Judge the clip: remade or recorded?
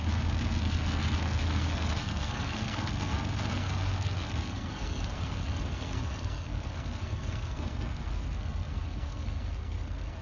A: remade